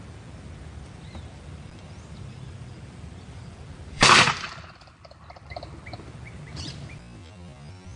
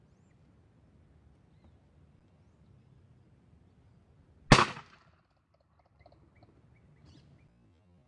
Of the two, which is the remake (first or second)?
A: first